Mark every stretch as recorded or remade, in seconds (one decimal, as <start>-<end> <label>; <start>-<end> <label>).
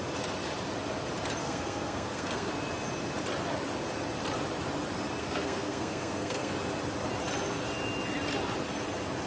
0.0-1.4 recorded; 1.4-2.5 remade; 2.5-5.2 recorded; 5.2-6.5 remade; 6.5-9.3 recorded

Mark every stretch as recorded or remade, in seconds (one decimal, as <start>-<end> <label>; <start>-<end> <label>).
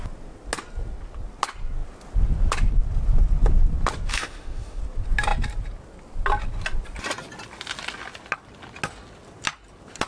0.0-4.1 recorded; 4.1-4.8 remade; 4.8-10.1 recorded